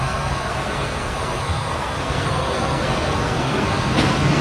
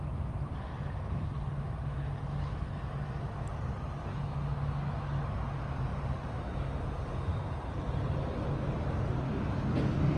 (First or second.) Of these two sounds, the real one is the second